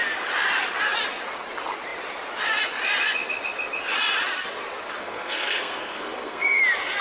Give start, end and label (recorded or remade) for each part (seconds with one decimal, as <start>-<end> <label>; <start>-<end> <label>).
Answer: 0.0-5.0 recorded; 5.0-6.6 remade; 6.6-7.0 recorded